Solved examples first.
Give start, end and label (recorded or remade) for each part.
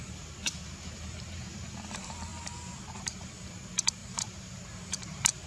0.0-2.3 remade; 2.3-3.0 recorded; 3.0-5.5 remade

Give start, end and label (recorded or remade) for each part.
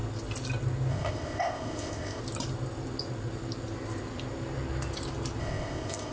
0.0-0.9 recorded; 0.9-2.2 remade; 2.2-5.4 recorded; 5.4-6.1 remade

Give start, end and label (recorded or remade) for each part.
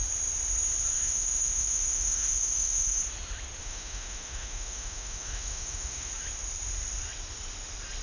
0.0-0.9 recorded; 0.9-3.0 remade; 3.0-3.6 recorded; 3.6-6.1 remade; 6.1-8.0 recorded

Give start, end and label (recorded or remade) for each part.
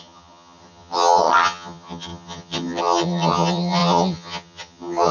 0.0-5.1 remade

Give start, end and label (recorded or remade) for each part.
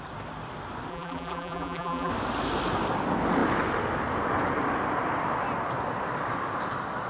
0.0-0.9 recorded; 0.9-2.1 remade; 2.1-7.1 recorded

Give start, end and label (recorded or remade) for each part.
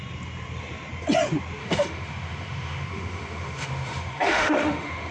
0.0-1.6 recorded; 1.6-5.1 remade